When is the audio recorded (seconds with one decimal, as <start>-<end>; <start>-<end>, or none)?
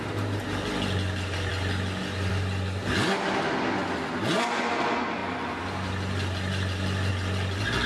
0.0-7.9